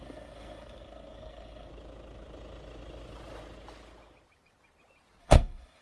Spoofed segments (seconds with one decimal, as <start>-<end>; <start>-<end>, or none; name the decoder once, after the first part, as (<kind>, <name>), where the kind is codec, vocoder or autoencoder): 0.0-1.7 (codec, SNAC); 5.2-5.8